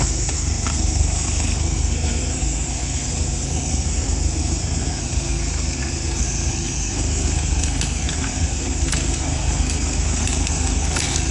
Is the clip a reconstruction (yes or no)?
yes